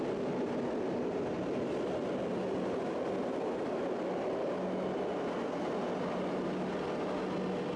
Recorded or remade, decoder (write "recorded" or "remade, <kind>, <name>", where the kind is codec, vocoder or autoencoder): recorded